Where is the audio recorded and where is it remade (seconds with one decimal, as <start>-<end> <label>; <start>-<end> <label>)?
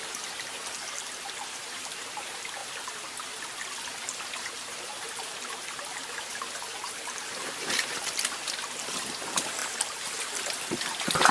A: 0.0-0.5 recorded; 0.5-2.6 remade; 2.6-4.3 recorded; 4.3-11.3 remade